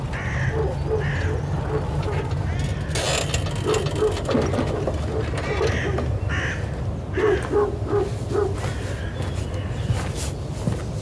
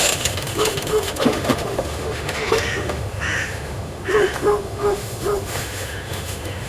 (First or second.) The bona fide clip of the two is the first